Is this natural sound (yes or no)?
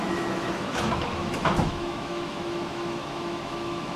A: no